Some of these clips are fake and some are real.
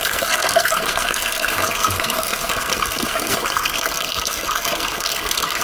fake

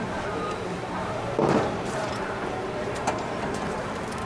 fake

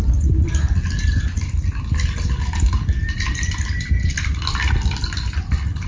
real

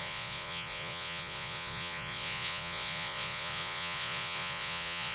fake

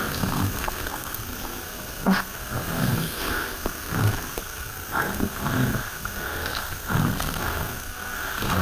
fake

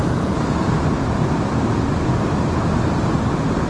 real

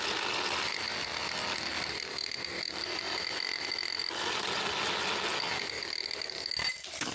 real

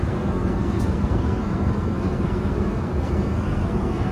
fake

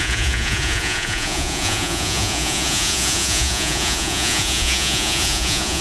fake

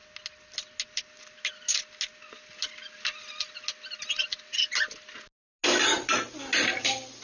real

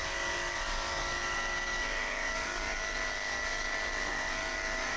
fake